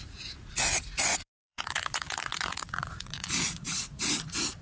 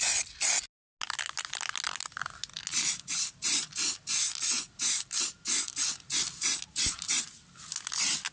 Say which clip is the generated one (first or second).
first